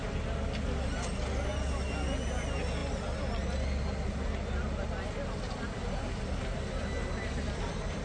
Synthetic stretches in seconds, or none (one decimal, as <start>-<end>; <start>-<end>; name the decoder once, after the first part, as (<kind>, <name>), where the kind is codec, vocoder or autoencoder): none